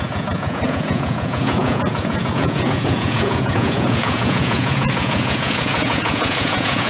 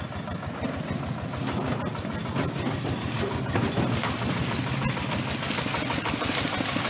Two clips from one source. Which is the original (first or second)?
second